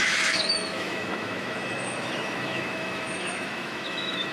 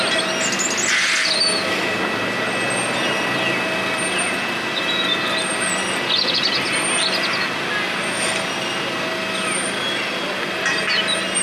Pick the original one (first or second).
second